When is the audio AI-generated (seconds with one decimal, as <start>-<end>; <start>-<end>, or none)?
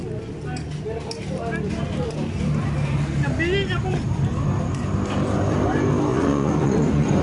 6.1-7.2